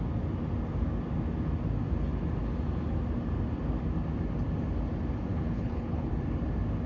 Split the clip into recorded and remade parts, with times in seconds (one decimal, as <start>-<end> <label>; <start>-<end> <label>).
0.0-5.3 recorded; 5.3-6.1 remade; 6.1-6.9 recorded